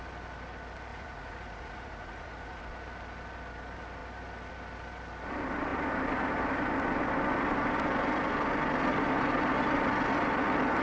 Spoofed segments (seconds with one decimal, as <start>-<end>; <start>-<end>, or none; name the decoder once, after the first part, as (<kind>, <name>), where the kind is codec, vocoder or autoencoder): 0.9-2.6 (vocoder, Vocos)

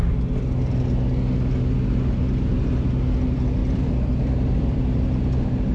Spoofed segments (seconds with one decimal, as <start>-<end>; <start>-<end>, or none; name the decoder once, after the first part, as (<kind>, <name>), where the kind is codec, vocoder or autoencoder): 3.6-4.8 (vocoder, BigVGAN v2)

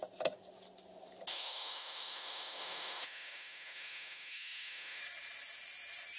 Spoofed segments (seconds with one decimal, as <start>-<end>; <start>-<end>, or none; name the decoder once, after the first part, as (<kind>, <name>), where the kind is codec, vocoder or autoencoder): 1.3-5.0 (autoencoder, DAC-VAE)

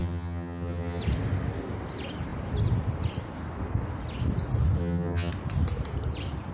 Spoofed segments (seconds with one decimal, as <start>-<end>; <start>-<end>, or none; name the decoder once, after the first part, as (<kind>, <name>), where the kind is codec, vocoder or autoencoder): 0.0-1.0 (vocoder, HiFi-GAN); 4.8-5.3

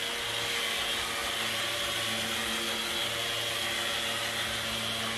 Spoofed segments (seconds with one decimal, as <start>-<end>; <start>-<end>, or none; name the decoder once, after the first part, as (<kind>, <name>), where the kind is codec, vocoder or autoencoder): none

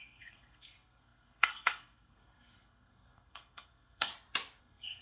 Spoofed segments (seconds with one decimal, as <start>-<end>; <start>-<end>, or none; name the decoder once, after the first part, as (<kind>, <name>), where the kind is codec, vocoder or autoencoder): 0.0-4.1 (codec, SNAC); 4.6-5.0